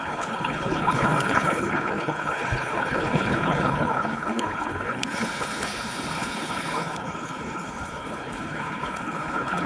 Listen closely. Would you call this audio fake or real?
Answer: fake